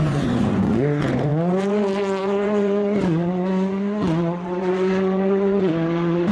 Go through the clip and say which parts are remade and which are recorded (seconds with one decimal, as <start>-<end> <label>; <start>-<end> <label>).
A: 0.0-1.3 remade; 1.3-2.2 recorded; 2.2-6.3 remade